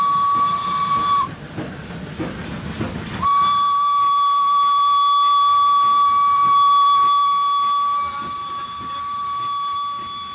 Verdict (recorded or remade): recorded